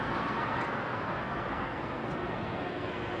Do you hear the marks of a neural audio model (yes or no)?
yes